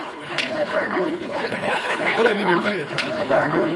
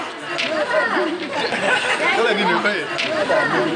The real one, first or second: second